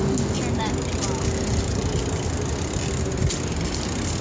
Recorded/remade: recorded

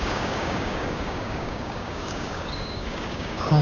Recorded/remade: remade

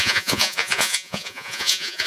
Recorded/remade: remade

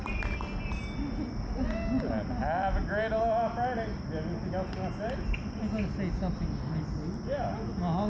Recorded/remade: recorded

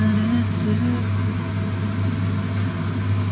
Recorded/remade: recorded